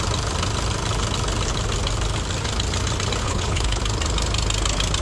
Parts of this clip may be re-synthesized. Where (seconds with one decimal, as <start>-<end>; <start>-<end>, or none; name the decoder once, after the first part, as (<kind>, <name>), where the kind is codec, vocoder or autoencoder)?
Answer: 3.2-3.8 (codec, HILCodec)